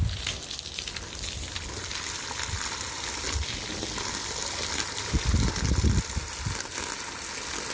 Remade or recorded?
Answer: recorded